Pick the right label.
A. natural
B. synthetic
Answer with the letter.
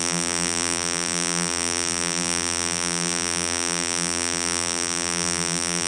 B